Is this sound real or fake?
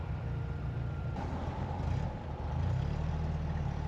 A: real